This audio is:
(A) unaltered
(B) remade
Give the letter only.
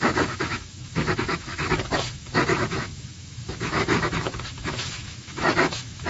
B